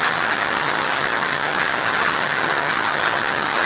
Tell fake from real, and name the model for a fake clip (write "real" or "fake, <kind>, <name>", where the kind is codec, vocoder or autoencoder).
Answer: fake, vocoder, HiFi-GAN